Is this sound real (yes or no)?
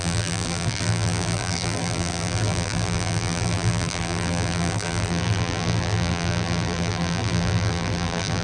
no